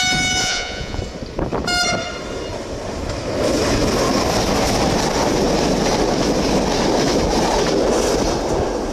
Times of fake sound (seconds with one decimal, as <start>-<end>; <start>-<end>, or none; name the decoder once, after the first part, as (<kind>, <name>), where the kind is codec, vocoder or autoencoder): 0.4-1.0 (vocoder, Vocos)

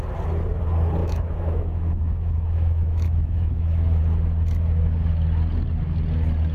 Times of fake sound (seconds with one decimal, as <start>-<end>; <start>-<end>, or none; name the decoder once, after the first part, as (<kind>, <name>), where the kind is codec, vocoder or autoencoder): 1.0-4.0 (autoencoder, DAC-VAE)

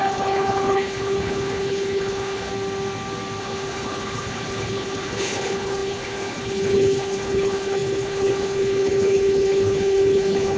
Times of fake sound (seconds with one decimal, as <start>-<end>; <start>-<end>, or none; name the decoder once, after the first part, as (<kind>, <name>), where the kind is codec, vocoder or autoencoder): 0.0-2.5 (codec, HILCodec); 3.4-10.6

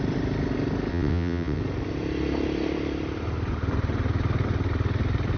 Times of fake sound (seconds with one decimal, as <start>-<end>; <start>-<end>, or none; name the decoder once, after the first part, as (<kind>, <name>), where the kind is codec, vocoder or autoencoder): 0.9-1.6 (vocoder, WaveNeXt)

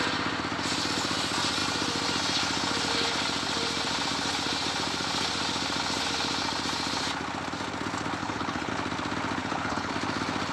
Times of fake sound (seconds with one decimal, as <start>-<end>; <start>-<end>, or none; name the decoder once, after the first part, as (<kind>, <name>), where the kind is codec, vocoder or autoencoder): 8.2-8.7 (codec, HILCodec); 9.4-9.9

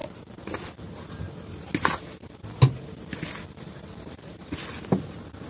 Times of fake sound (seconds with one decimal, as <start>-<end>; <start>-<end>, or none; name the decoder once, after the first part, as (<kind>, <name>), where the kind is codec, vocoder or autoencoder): none

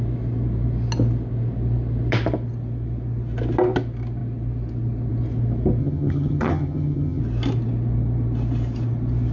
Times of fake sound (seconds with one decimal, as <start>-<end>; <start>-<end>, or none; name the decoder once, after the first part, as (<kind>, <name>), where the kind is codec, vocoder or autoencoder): 5.8-7.2 (vocoder, HiFi-GAN)

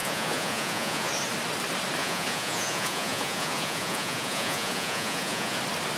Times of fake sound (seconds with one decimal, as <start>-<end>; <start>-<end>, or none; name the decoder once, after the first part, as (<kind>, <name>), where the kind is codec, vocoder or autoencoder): 0.0-1.1 (vocoder, Vocos); 2.0-5.6